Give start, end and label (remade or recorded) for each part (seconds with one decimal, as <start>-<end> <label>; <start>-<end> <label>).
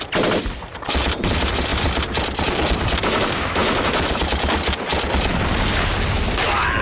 0.0-6.8 recorded